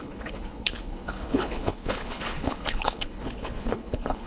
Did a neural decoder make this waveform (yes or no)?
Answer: yes